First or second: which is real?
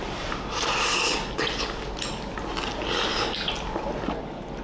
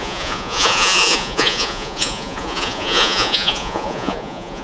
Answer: first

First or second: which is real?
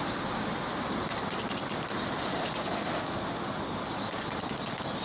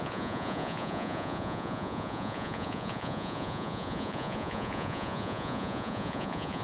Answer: first